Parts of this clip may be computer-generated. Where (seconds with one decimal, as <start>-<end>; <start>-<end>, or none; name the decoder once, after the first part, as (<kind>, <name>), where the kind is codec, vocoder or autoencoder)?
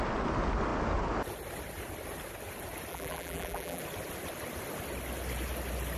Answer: 2.9-3.8 (vocoder, BigVGAN v2)